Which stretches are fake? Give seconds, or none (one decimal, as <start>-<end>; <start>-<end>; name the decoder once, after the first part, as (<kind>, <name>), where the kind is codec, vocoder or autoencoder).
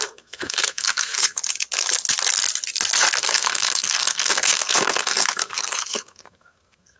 0.0-1.4 (codec, SNAC); 3.2-7.0